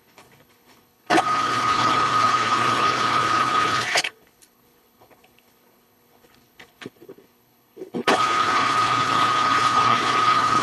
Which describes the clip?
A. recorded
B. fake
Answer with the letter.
B